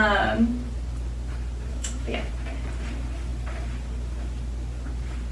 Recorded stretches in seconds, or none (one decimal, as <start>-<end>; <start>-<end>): 0.0-1.7; 2.3-5.3